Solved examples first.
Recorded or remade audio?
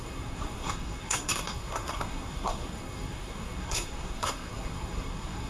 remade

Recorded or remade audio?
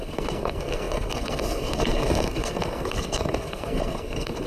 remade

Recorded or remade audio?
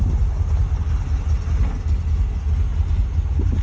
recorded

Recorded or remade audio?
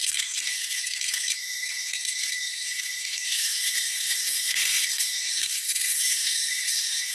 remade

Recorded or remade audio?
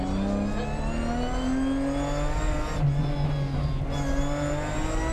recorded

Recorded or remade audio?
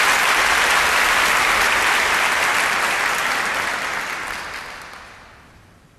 recorded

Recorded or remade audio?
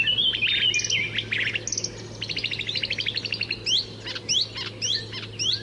recorded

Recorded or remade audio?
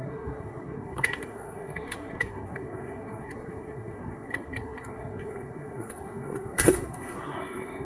remade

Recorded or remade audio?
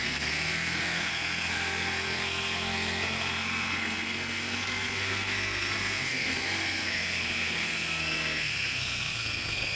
remade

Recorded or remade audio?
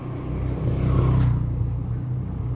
recorded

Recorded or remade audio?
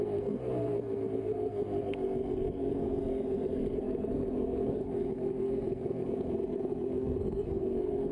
remade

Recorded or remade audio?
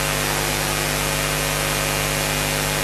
recorded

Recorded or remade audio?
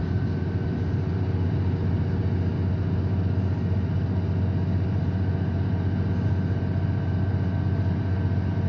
recorded